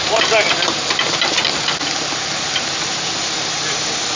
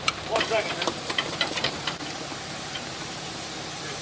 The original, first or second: first